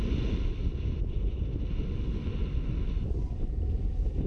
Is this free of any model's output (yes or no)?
yes